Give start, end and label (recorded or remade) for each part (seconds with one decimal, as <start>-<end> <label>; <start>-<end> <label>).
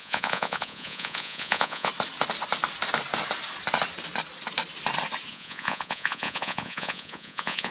0.0-1.9 remade; 1.9-5.3 recorded; 5.3-7.7 remade